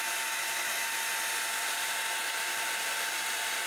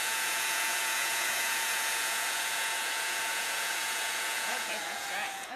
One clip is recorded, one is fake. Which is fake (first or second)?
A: second